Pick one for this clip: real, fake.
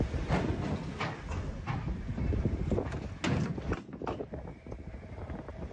real